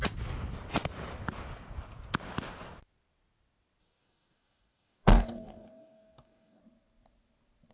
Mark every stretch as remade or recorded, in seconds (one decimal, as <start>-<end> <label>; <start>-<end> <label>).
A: 0.0-3.8 recorded; 3.8-6.6 remade; 6.6-7.7 recorded